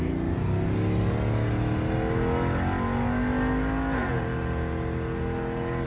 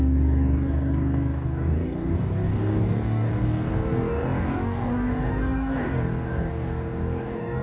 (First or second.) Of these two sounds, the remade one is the second